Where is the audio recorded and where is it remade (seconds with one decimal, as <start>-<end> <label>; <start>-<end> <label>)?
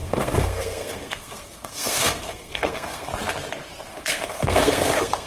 0.0-3.1 remade; 3.1-3.9 recorded; 3.9-5.3 remade